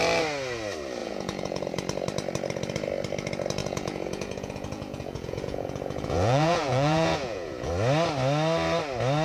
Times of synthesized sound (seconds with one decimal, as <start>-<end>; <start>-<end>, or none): 1.0-1.7; 3.6-7.7